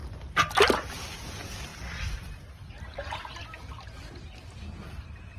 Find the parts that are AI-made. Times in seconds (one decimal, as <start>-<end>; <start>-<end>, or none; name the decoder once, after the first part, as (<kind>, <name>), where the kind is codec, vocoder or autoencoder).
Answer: none